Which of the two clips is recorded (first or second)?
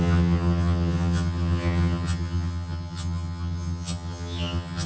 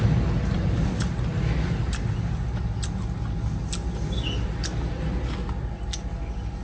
second